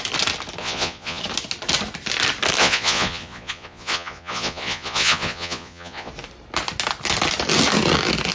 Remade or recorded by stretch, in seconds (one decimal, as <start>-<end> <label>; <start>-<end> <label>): 0.0-0.6 recorded; 0.6-1.2 remade; 1.2-2.6 recorded; 2.6-6.1 remade; 6.1-8.3 recorded

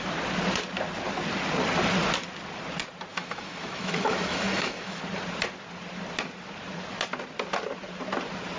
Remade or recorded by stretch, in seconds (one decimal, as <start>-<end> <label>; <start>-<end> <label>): 0.0-3.1 recorded; 3.1-5.0 remade; 5.0-8.6 recorded

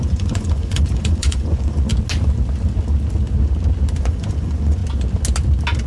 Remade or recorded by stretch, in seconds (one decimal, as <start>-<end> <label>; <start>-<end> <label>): 0.0-1.9 remade; 1.9-4.0 recorded; 4.0-4.8 remade; 4.8-5.9 recorded

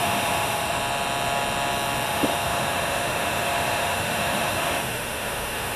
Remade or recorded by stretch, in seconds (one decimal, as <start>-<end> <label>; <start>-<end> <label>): 0.0-0.8 remade; 0.8-2.1 recorded; 2.1-5.8 remade